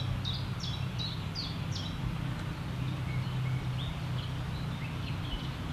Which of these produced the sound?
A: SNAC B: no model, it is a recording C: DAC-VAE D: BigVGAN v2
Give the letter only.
B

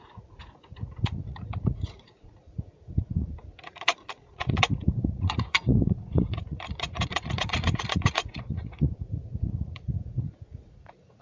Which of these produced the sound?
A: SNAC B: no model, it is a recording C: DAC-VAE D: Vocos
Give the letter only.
D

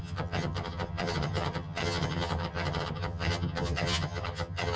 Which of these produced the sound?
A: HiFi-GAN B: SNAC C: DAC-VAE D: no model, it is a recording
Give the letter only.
A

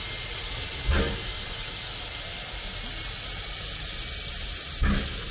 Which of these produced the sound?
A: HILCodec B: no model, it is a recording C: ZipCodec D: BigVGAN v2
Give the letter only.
B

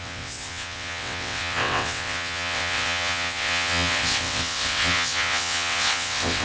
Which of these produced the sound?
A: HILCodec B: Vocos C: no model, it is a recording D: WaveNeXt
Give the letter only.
D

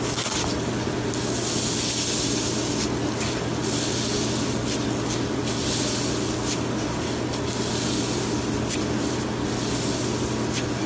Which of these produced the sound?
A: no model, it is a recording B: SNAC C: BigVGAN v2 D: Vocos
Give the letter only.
A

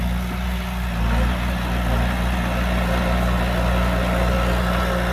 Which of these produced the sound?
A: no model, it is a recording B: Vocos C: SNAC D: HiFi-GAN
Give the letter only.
A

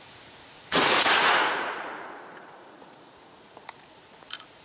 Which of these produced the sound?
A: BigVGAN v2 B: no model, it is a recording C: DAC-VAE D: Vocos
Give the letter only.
D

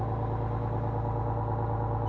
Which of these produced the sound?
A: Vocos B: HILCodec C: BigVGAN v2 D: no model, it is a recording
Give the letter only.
C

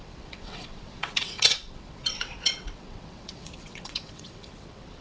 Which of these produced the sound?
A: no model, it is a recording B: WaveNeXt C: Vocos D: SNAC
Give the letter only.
B